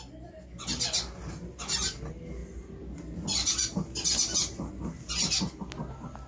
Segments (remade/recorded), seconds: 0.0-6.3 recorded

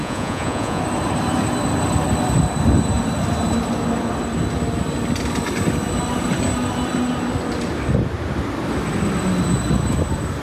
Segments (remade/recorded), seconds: 0.0-0.8 remade; 0.8-10.4 recorded

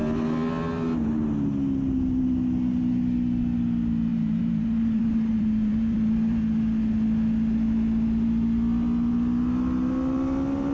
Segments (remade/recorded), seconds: 0.0-4.1 recorded; 4.1-6.4 remade; 6.4-10.7 recorded

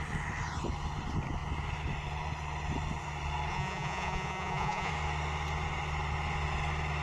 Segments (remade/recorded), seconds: 0.0-3.5 recorded; 3.5-4.9 remade; 4.9-7.0 recorded

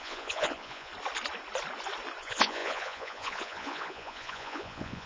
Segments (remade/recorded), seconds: 0.0-0.9 remade; 0.9-2.2 recorded; 2.2-5.1 remade

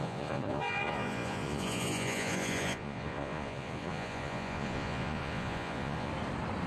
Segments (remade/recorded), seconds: 0.0-6.1 remade; 6.1-6.7 recorded

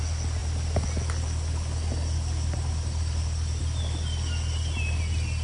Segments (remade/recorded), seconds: 0.0-5.4 recorded